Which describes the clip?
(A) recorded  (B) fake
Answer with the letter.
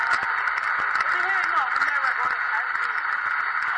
A